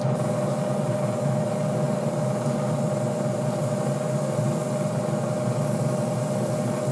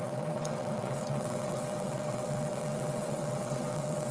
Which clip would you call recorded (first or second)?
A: first